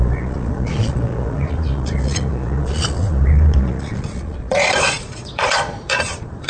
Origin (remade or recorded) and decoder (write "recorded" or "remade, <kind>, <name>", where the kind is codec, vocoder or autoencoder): remade, vocoder, Vocos